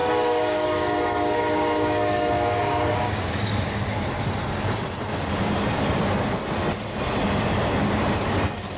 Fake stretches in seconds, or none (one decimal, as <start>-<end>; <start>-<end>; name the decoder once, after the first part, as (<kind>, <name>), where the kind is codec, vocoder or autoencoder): 0.0-3.4 (codec, DAC)